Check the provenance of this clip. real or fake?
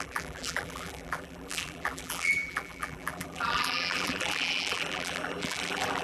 fake